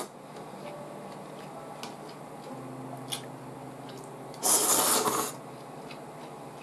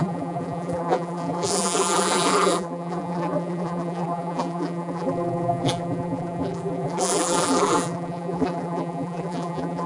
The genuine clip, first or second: first